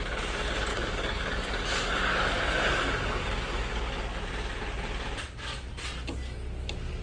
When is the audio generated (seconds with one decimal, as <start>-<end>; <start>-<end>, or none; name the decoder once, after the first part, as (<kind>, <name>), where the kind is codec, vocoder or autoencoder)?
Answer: 0.7-4.2 (codec, DAC)